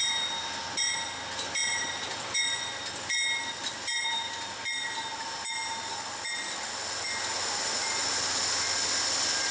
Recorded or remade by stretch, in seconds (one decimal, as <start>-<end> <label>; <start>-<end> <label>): 0.0-9.5 recorded